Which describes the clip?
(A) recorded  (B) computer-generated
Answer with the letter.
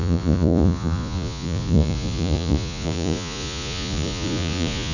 B